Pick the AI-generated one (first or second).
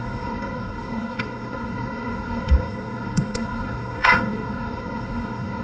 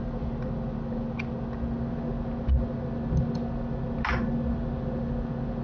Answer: first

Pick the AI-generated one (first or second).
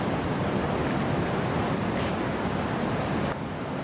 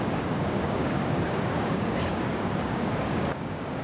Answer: second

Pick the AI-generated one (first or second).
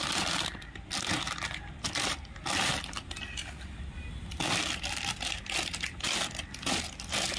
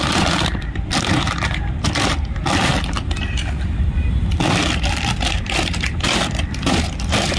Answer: second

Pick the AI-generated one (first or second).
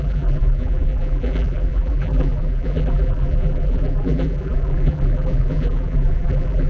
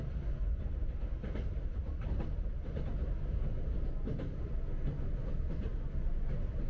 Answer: first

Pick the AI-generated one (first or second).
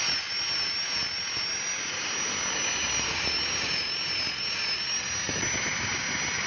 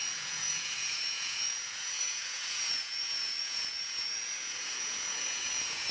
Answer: second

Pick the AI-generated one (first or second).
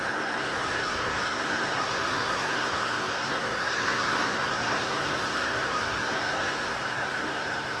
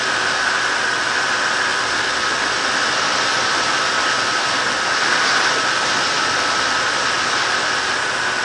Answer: first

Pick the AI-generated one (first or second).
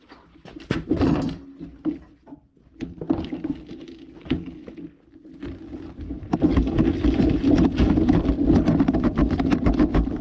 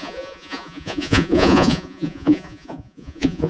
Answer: second